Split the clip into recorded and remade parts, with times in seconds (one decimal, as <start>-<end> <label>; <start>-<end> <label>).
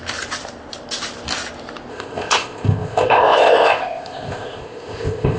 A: 0.0-1.9 recorded; 1.9-5.4 remade